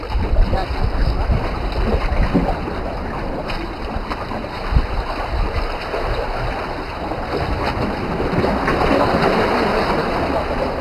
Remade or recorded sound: recorded